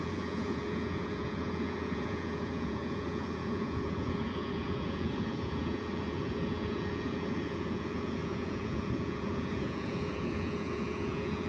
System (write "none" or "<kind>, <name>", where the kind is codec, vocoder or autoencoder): vocoder, Vocos